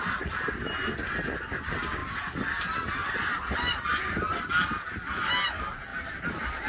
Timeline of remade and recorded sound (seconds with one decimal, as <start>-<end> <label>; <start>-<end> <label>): 0.0-6.7 recorded